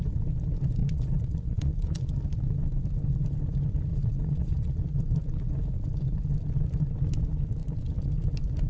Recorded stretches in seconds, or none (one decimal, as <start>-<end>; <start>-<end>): 0.0-0.8; 2.1-3.9; 4.7-8.7